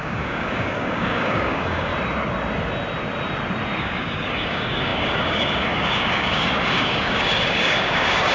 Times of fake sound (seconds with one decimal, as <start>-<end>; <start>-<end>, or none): 0.0-1.9; 3.8-8.3